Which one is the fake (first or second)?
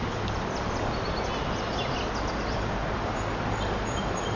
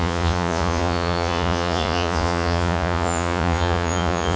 second